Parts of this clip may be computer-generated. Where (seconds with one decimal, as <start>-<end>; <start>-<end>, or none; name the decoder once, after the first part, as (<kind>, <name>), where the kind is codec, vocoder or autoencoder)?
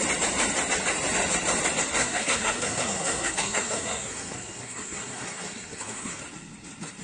2.0-6.2 (codec, SNAC)